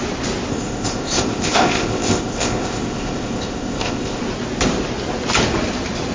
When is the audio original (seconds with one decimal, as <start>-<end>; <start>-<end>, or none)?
0.0-0.5; 4.2-6.1